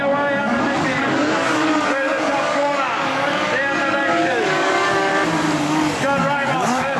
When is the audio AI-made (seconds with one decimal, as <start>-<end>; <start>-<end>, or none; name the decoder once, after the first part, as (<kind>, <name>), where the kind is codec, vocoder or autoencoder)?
0.0-5.1 (codec, DAC); 5.6-7.0

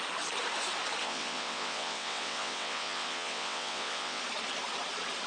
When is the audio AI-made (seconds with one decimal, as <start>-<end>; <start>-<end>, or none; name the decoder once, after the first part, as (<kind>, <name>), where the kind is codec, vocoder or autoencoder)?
1.0-4.2 (vocoder, WaveNeXt)

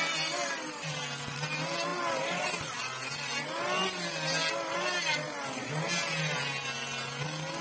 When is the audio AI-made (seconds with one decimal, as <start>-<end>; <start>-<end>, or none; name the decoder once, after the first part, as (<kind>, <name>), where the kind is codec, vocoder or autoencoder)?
none

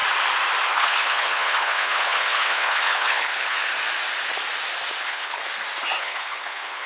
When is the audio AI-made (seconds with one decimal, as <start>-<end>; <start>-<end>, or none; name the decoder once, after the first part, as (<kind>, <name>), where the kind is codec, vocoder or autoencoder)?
0.7-3.7 (codec, HILCodec); 5.0-5.4; 6.0-6.9

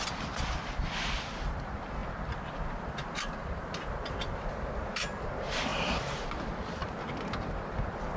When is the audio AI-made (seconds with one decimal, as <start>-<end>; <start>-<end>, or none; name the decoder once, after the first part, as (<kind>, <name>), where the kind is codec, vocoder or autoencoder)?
none